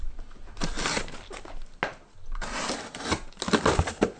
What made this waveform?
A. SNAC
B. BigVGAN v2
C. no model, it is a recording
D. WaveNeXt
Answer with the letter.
C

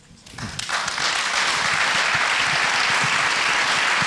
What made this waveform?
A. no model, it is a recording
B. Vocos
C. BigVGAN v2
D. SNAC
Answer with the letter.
A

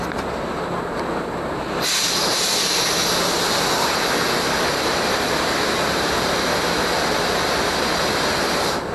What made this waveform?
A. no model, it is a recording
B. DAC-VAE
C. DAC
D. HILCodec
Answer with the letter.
A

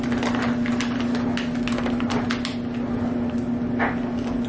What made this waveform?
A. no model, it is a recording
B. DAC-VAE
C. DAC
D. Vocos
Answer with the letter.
A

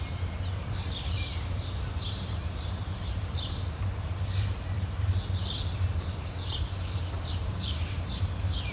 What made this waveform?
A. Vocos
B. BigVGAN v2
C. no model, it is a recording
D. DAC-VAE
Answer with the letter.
B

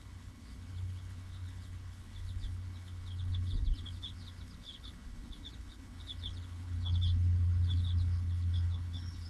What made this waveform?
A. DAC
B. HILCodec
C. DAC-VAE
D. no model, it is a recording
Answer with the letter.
B